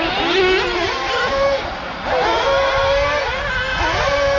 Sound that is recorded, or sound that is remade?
recorded